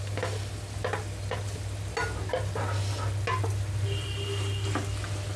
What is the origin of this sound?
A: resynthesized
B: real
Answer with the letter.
B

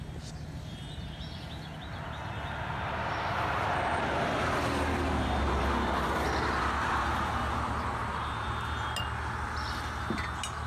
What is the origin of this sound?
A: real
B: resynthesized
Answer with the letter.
A